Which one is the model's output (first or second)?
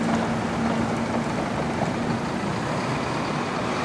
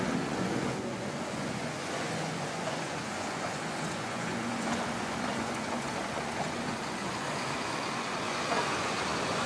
second